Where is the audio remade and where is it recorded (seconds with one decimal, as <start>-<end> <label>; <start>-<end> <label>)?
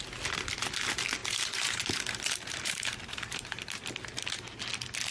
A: 0.0-1.2 recorded; 1.2-3.9 remade; 3.9-5.1 recorded